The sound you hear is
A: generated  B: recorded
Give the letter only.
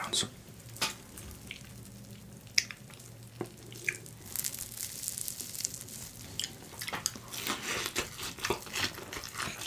B